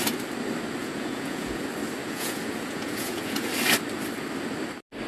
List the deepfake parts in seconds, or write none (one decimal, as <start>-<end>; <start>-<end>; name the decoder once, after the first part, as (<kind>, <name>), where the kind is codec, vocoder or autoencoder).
0.8-1.6 (vocoder, Vocos); 2.0-3.5